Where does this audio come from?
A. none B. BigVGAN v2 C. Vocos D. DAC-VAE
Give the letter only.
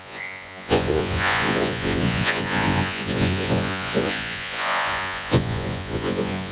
C